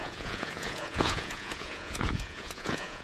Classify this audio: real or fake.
fake